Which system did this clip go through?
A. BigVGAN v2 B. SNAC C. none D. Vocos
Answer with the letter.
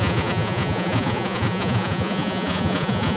D